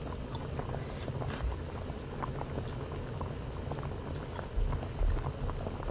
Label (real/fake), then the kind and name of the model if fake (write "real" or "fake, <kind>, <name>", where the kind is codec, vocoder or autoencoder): real